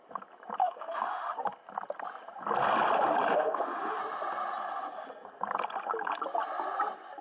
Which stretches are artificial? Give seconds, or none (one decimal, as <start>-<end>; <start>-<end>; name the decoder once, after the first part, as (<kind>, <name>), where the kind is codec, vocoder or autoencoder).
0.6-1.4 (autoencoder, DAC-VAE); 3.3-4.0